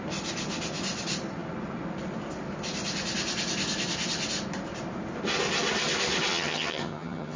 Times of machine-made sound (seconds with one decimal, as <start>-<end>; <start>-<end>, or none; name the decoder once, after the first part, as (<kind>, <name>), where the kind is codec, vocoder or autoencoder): 6.3-7.4 (vocoder, HiFi-GAN)